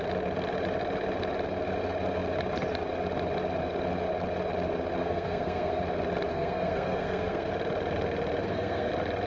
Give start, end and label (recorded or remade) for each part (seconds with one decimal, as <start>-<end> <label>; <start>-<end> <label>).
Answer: 0.0-5.0 recorded; 5.0-5.8 remade; 5.8-6.3 recorded; 6.3-7.5 remade; 7.5-8.4 recorded; 8.4-8.9 remade; 8.9-9.3 recorded